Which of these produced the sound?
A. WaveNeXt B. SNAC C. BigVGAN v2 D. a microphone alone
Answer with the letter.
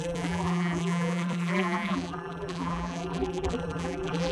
C